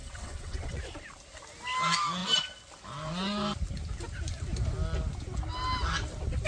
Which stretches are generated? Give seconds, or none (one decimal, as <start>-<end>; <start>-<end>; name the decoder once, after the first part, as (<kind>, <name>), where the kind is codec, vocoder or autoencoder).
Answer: 0.0-0.8 (vocoder, WaveNeXt)